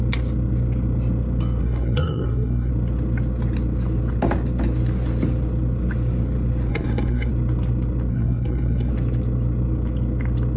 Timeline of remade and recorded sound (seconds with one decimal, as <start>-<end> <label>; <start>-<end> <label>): 0.0-1.6 recorded; 1.6-2.7 remade; 2.7-6.7 recorded; 6.7-7.3 remade; 7.3-8.1 recorded; 8.1-8.9 remade; 8.9-10.6 recorded